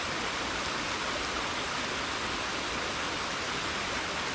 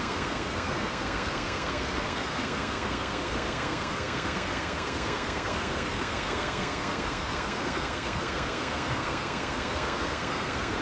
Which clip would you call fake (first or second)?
second